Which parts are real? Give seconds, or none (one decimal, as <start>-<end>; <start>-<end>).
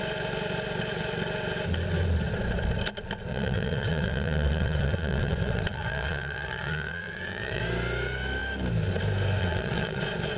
0.0-3.3; 7.6-9.4; 10.0-10.4